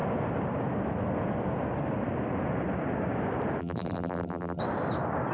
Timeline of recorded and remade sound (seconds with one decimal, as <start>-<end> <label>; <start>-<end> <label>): 0.0-3.6 recorded; 3.6-4.6 remade; 4.6-5.3 recorded